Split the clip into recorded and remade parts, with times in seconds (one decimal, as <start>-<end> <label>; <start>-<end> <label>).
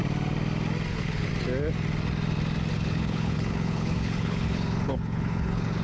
0.0-0.9 recorded; 0.9-1.3 remade; 1.3-2.7 recorded; 2.7-5.8 remade